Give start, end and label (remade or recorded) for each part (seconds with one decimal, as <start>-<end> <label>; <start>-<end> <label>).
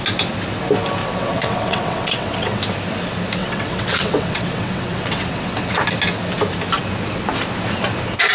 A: 0.0-1.0 recorded; 1.0-2.6 remade; 2.6-3.4 recorded; 3.4-5.8 remade; 5.8-8.3 recorded